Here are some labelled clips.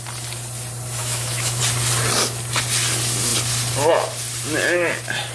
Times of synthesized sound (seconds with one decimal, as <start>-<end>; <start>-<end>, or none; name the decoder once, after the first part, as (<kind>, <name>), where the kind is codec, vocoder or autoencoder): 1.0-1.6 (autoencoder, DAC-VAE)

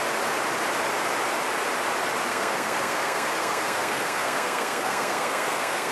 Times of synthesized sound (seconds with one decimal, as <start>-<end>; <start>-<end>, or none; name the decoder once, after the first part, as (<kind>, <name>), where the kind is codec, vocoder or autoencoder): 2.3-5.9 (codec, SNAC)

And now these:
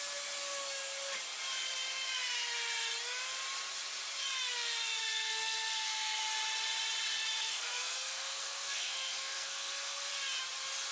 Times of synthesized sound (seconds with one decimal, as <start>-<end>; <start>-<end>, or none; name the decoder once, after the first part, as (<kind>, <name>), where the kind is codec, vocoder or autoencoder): 5.0-6.2 (codec, SNAC); 7.4-10.1

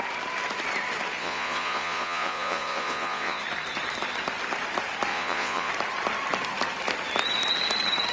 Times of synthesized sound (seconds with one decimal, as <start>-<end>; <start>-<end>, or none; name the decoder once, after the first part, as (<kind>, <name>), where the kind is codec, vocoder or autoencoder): 1.2-3.4 (vocoder, Vocos); 5.1-5.7

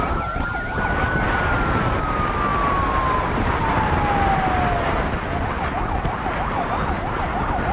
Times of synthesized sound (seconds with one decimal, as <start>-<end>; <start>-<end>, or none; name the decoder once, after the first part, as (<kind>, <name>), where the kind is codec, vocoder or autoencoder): none

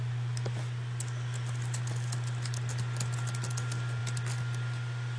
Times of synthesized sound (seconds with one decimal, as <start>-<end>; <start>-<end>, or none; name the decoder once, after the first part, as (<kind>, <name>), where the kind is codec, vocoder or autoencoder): none

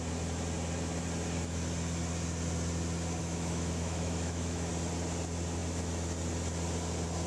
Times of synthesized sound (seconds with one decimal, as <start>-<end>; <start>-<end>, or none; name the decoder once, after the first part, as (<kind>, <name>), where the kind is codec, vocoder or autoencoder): 3.2-4.7 (autoencoder, DAC-VAE)